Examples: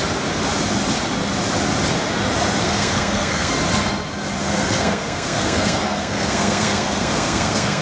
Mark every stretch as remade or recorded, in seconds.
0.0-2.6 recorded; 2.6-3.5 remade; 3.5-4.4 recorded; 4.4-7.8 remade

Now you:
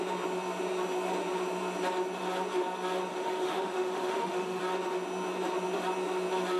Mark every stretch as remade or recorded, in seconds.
0.0-3.1 recorded; 3.1-4.6 remade; 4.6-6.6 recorded